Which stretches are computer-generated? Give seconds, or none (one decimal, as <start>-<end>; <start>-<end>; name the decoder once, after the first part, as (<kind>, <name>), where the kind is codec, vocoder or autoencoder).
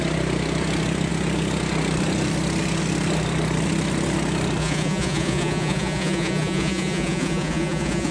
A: 4.6-8.1 (vocoder, Vocos)